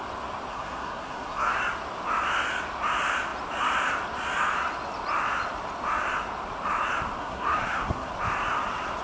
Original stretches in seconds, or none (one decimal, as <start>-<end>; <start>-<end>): 0.0-0.5; 1.6-7.2; 8.1-9.0